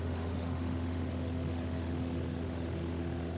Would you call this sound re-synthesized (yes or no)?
yes